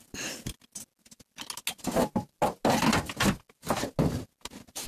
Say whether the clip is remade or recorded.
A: recorded